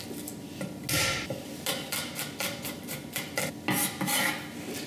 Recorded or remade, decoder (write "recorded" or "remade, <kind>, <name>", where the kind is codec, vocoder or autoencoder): recorded